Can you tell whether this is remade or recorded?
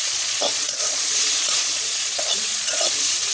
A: remade